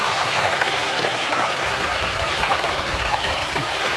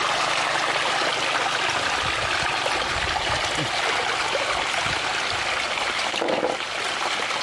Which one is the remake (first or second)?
first